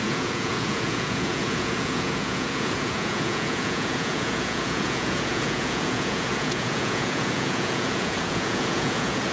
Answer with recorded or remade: remade